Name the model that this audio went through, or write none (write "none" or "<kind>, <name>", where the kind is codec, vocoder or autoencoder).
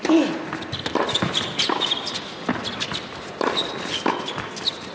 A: none